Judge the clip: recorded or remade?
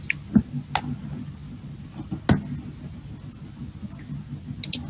recorded